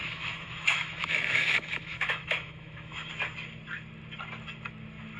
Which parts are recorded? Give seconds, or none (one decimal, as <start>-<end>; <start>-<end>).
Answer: 3.1-5.2